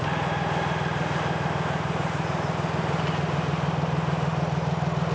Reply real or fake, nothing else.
real